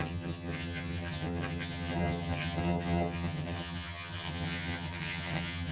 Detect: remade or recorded remade